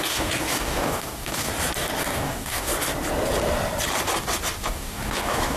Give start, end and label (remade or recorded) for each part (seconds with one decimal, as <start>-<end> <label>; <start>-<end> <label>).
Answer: 0.0-1.5 remade; 1.5-2.0 recorded; 2.0-2.7 remade; 2.7-4.6 recorded; 4.6-5.6 remade